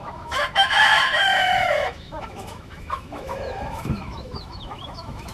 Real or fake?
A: fake